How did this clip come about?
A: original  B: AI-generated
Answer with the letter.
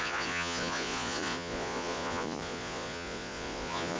B